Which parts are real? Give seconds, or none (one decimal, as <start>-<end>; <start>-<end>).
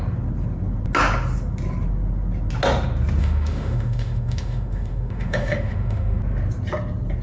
0.0-3.2; 6.2-7.2